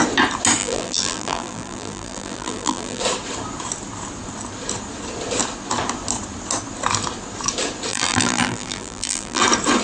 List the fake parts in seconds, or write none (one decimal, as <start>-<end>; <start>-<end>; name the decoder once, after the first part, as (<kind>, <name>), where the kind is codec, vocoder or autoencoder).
0.6-3.0 (vocoder, BigVGAN v2); 7.9-9.4